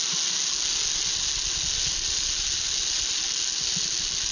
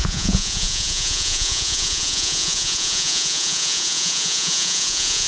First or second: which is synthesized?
second